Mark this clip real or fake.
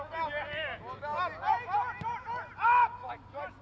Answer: real